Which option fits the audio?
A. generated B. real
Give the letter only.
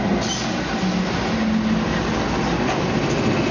B